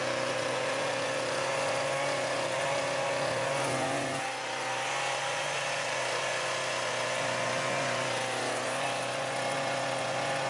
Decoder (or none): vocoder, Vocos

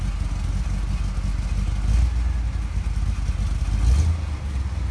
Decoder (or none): none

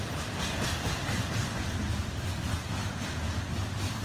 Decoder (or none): none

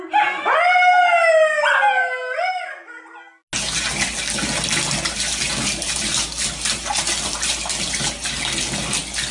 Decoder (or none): none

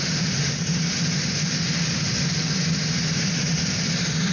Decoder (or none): vocoder, BigVGAN v2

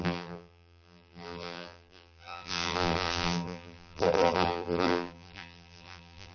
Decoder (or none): vocoder, BigVGAN v2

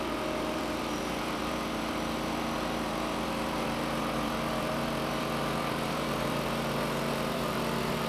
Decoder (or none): vocoder, BigVGAN v2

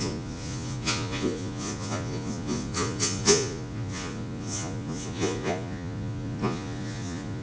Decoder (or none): vocoder, Vocos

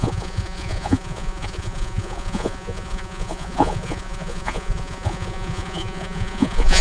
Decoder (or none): vocoder, Vocos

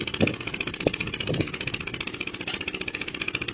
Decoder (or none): vocoder, BigVGAN v2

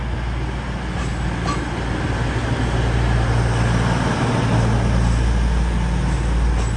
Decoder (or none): none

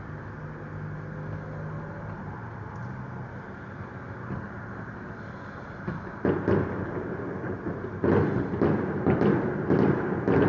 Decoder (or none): none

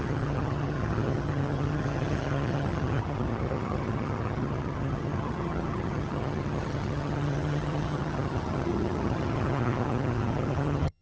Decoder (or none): vocoder, HiFi-GAN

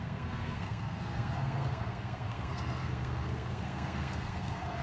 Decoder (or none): codec, SNAC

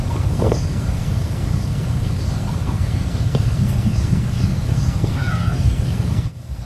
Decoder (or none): codec, SNAC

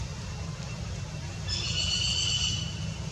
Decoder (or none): none